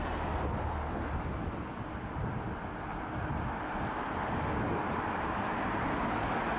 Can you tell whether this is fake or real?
real